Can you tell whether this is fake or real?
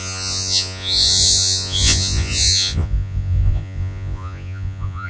fake